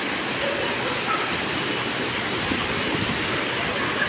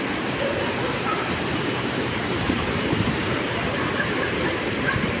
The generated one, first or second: second